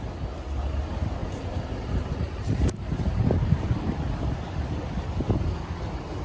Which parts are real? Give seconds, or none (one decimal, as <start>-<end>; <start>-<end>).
0.0-1.2; 4.9-6.2